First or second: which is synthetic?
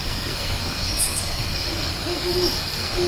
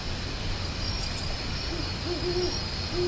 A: first